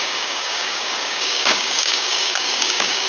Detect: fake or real fake